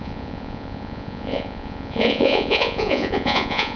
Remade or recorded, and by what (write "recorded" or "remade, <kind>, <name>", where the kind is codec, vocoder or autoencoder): remade, vocoder, Vocos